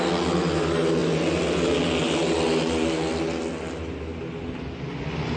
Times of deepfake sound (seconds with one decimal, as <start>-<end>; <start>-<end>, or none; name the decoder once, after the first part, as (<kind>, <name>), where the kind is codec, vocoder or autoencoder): none